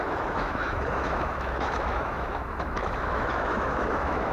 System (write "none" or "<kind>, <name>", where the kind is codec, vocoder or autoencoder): autoencoder, DAC-VAE